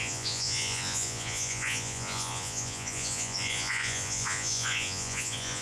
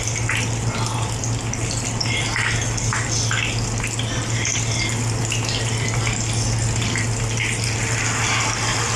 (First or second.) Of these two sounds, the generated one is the first